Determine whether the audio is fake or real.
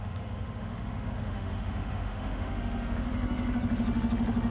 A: fake